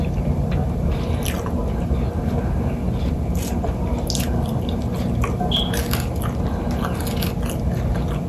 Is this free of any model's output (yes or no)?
yes